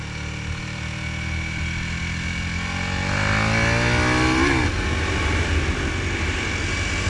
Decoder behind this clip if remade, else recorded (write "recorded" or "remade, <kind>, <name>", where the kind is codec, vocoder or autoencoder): recorded